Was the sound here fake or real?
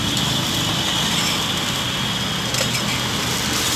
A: real